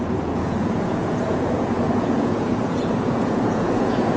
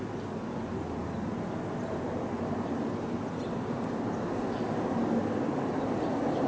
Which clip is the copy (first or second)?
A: first